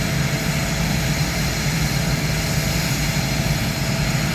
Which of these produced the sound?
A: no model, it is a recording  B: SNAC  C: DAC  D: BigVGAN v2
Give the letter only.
A